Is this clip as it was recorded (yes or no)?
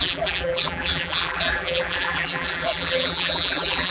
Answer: no